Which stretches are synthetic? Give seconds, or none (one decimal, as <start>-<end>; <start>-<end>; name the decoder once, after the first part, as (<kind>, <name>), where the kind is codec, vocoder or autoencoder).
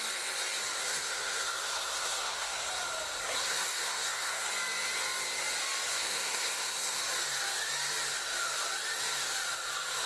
0.8-2.7 (codec, SNAC); 3.2-4.5; 5.9-7.0